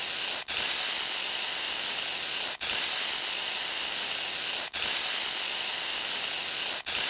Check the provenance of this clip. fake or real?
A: real